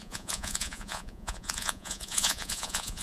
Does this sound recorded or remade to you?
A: remade